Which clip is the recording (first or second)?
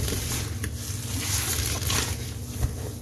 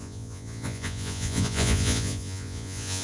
first